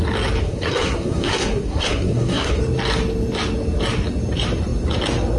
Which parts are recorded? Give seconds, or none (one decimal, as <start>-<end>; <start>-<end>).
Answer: 0.0-0.4; 2.6-5.4